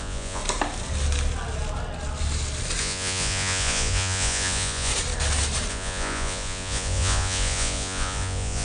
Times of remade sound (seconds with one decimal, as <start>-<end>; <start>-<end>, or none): 0.0-0.4; 2.8-4.9; 5.7-8.6